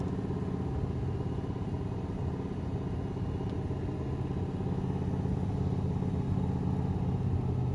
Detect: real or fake real